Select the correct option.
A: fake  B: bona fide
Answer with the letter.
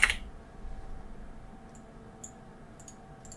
B